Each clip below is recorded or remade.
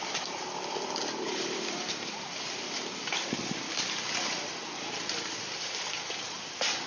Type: recorded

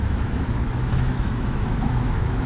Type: remade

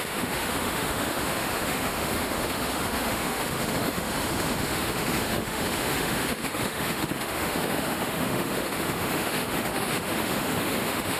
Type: remade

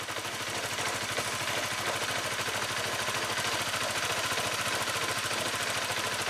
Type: recorded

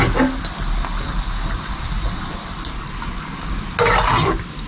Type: recorded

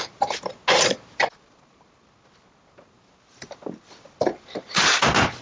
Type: recorded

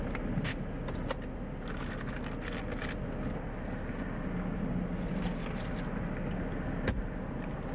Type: recorded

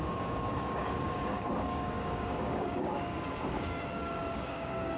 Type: remade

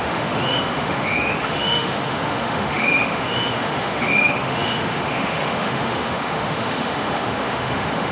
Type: remade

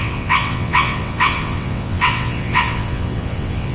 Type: remade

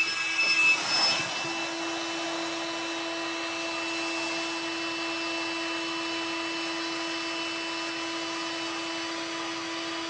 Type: recorded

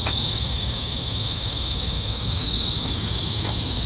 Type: remade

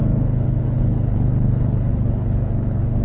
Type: remade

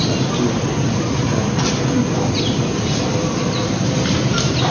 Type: recorded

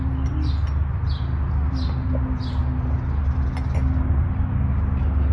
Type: recorded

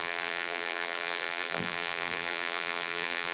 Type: remade